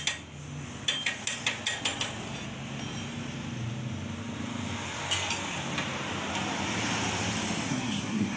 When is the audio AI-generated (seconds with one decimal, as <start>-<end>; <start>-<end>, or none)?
7.7-8.4